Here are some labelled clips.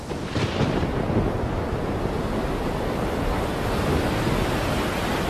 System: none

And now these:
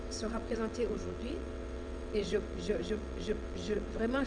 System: vocoder, WaveNeXt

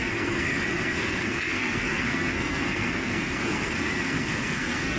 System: codec, SNAC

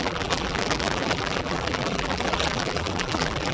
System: vocoder, BigVGAN v2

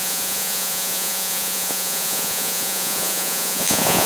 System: vocoder, Vocos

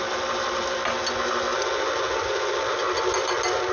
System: none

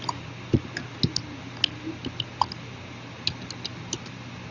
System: none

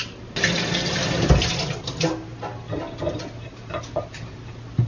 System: none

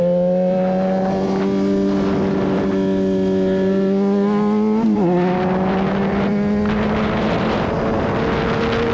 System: none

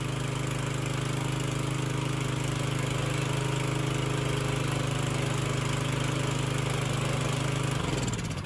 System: none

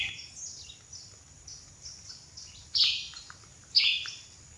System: none